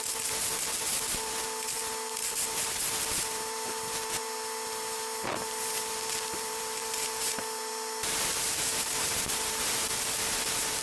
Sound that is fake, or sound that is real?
fake